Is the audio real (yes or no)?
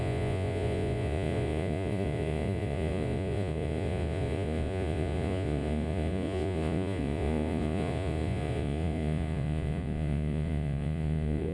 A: no